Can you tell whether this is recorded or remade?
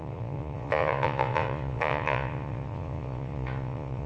remade